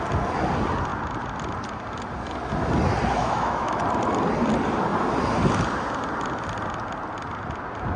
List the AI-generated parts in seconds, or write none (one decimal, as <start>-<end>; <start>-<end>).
3.2-3.8